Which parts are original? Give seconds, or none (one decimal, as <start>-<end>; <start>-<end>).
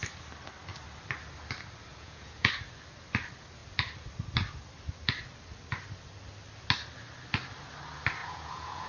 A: 0.0-1.9; 2.5-8.2